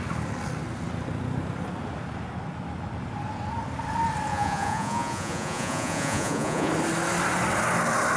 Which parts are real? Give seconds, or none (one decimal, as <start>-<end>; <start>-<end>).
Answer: 0.0-4.3; 6.7-8.2